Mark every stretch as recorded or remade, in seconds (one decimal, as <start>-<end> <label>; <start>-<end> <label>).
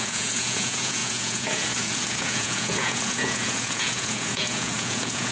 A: 0.0-5.3 remade